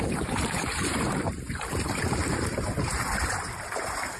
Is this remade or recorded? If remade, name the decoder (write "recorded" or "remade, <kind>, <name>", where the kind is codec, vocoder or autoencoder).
remade, vocoder, BigVGAN v2